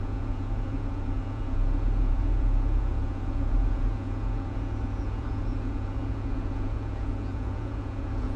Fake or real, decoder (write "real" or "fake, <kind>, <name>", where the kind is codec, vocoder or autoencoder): fake, vocoder, Vocos